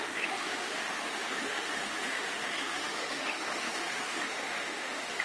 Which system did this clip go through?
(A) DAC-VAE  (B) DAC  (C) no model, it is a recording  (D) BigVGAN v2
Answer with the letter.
A